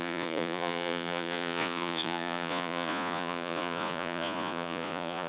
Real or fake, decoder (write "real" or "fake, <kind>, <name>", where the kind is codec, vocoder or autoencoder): fake, vocoder, Vocos